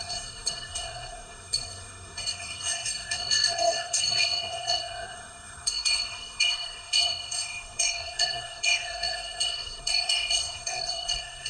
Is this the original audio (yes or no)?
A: no